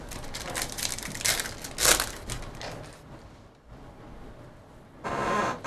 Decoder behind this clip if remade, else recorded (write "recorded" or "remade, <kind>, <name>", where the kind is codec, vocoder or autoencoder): recorded